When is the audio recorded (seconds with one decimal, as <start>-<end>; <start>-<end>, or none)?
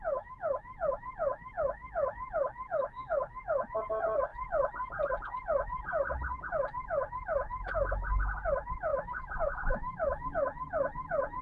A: 0.0-8.9; 10.3-11.4